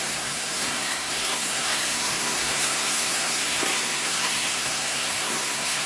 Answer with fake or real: fake